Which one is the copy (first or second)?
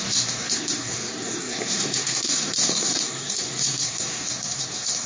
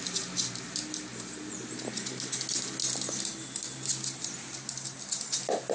first